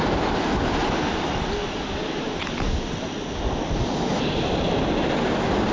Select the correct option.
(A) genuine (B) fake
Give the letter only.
A